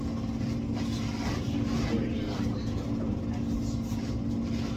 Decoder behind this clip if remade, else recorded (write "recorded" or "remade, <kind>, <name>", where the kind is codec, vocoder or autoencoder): recorded